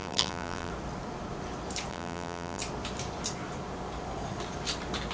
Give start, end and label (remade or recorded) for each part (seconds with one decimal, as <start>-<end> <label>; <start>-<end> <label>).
0.0-0.7 remade; 0.7-1.9 recorded; 1.9-2.6 remade; 2.6-5.1 recorded